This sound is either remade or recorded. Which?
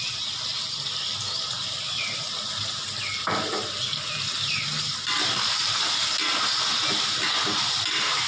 recorded